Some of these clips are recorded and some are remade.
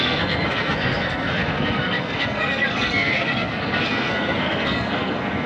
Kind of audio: remade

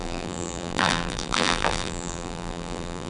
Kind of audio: remade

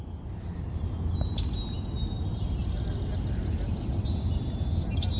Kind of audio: recorded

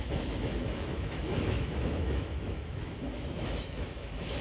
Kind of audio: remade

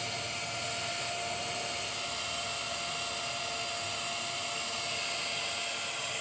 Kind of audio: recorded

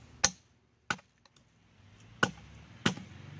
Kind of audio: recorded